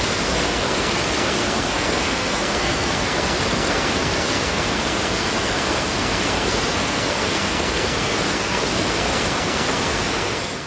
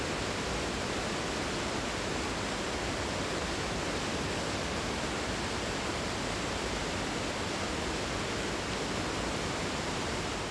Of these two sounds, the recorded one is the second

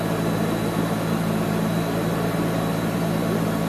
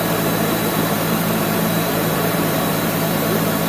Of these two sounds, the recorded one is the first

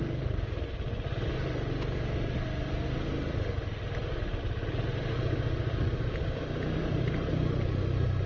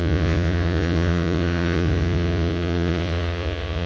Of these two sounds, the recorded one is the first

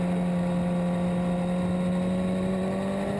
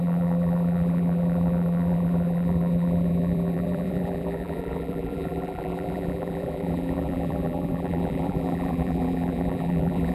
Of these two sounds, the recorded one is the first